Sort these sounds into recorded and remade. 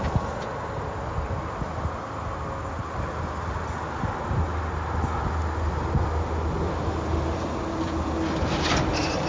recorded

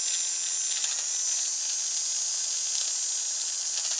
recorded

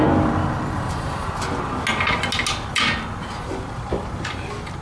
recorded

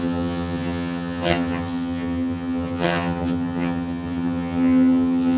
remade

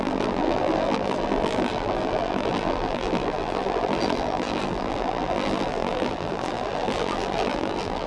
remade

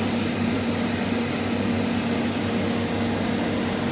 recorded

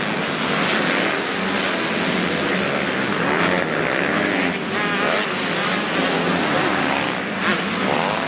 recorded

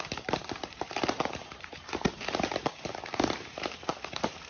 remade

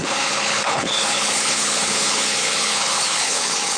remade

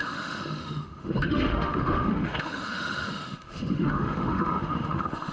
remade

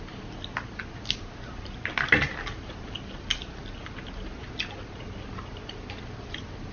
recorded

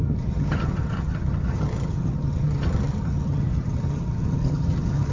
remade